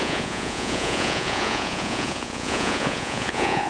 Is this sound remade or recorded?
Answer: remade